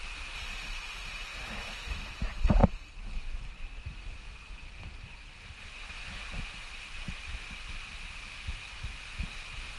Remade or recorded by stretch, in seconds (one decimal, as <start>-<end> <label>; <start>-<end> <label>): 0.0-1.3 recorded; 1.3-2.1 remade; 2.1-9.8 recorded